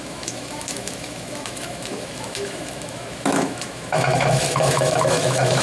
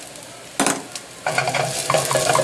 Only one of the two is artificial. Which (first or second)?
first